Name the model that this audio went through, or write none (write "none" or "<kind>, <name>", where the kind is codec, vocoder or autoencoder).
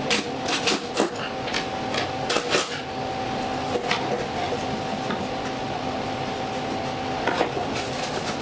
none